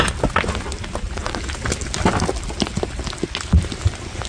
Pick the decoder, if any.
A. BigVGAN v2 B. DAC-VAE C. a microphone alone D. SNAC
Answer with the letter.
C